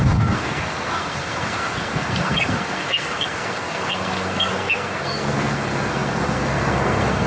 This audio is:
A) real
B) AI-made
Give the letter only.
B